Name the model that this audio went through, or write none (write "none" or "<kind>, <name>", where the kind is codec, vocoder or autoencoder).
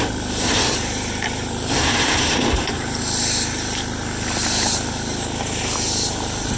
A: vocoder, BigVGAN v2